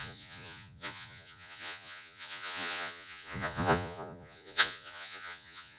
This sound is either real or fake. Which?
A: fake